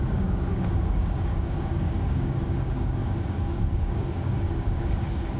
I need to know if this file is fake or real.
fake